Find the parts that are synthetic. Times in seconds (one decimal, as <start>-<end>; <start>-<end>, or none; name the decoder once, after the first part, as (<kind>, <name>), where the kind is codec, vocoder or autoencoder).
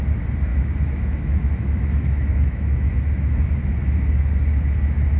0.5-2.9 (autoencoder, DAC-VAE)